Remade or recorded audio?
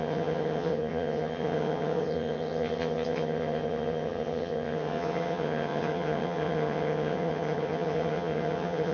remade